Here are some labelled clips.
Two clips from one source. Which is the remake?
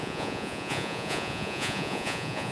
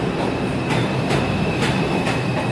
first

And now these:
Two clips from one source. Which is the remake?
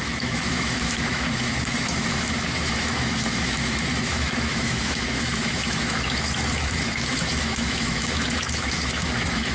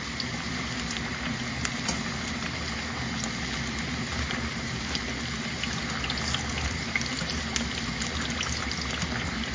first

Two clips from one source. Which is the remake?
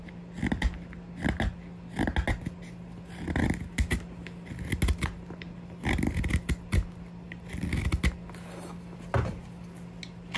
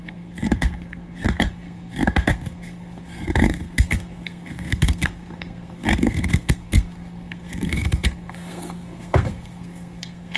second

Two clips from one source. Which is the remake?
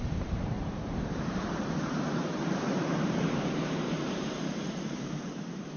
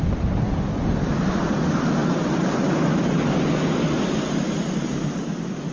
first